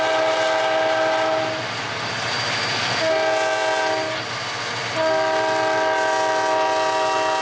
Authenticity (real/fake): real